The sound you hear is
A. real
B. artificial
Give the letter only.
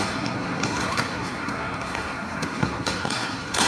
B